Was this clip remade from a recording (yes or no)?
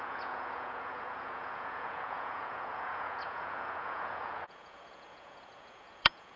yes